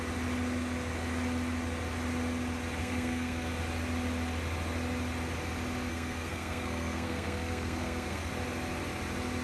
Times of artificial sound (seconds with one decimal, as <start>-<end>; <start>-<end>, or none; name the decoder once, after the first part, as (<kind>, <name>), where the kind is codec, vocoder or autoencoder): 2.8-3.5 (codec, SNAC); 5.9-8.3